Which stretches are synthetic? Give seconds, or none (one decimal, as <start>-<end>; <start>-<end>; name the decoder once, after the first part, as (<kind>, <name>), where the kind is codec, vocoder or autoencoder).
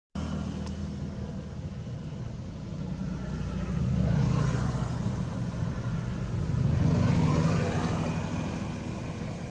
3.7-7.8 (vocoder, Vocos)